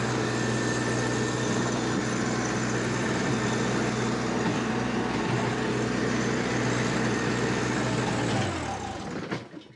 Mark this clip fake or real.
real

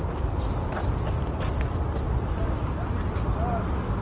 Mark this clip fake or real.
real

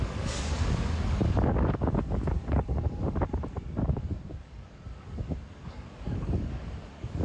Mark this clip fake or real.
fake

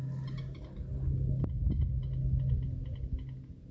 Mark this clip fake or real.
real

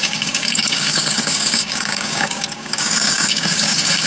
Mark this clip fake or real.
fake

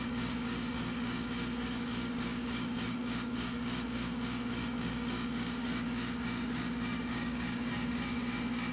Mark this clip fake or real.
fake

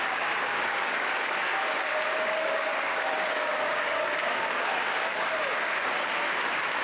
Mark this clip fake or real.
fake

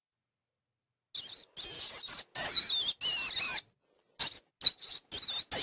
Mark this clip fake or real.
real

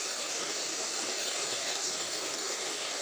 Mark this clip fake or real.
fake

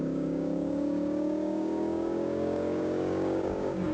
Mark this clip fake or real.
fake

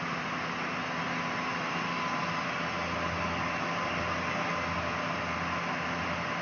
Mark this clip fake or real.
real